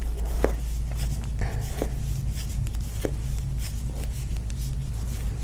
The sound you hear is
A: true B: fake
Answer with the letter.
A